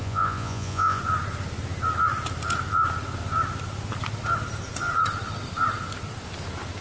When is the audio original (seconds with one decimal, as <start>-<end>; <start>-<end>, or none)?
1.0-6.8